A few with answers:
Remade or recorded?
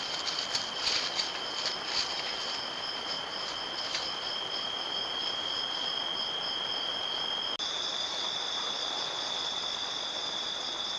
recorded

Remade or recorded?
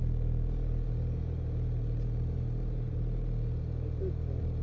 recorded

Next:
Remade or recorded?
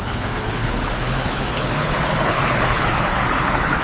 remade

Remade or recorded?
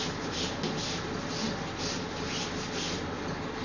recorded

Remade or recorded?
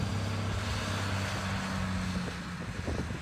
recorded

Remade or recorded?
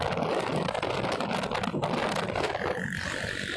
recorded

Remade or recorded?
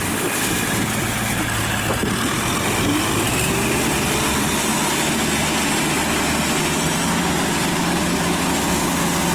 recorded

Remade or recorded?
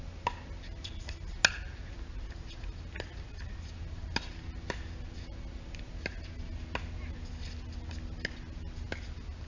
recorded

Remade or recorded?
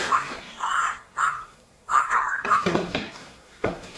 remade